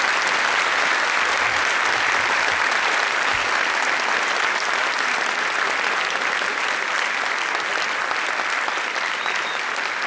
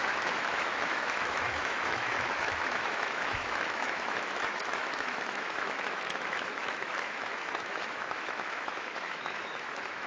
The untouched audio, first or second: first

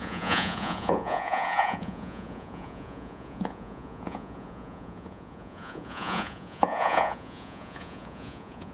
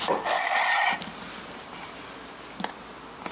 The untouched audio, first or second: second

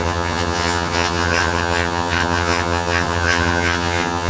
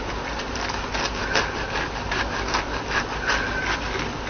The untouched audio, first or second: second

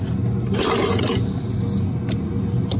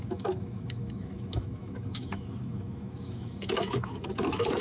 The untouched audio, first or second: first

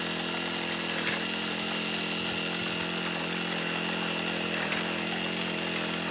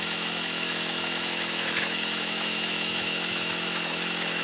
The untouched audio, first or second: first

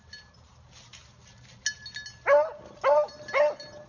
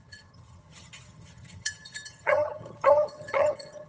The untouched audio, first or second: first